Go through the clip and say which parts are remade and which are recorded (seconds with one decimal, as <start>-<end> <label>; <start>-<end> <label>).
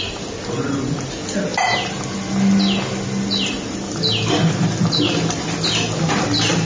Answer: 0.0-6.6 recorded